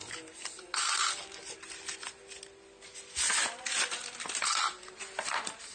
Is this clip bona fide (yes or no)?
yes